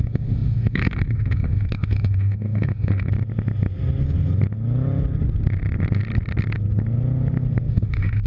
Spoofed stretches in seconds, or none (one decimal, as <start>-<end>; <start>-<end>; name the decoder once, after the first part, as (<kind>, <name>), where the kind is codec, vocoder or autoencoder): 0.0-3.1 (autoencoder, DAC-VAE); 7.7-8.3